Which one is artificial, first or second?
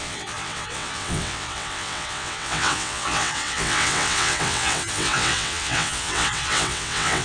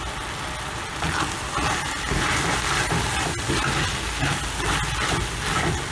first